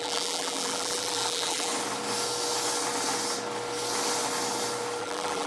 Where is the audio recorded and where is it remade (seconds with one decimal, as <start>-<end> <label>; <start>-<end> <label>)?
0.0-1.7 remade; 1.7-5.0 recorded; 5.0-5.5 remade